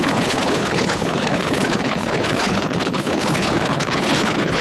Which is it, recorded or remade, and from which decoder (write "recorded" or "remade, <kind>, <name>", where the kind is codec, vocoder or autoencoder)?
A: remade, codec, HILCodec